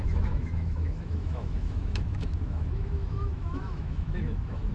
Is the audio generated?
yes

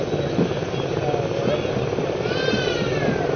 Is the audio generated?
no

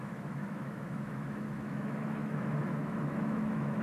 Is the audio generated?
yes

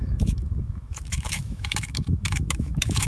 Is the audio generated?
yes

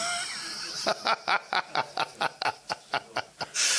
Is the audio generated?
no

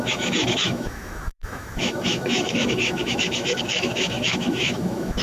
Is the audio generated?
yes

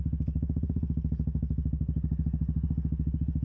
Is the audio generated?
no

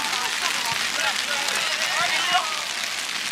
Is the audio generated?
no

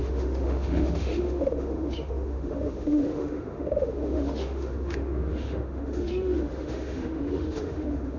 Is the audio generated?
yes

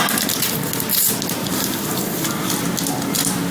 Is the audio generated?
no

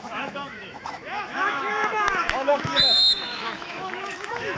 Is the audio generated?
yes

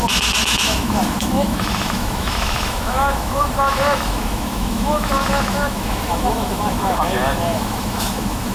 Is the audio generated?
yes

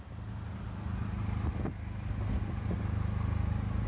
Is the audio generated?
no